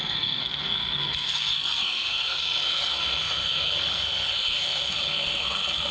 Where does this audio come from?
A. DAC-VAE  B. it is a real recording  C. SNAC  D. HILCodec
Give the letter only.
C